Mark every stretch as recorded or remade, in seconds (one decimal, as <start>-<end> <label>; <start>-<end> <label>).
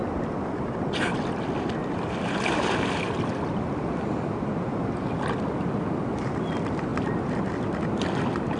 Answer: 0.0-8.6 recorded